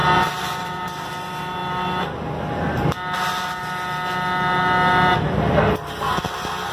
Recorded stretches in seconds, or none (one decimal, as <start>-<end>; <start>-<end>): 1.1-6.7